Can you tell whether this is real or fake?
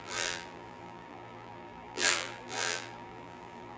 fake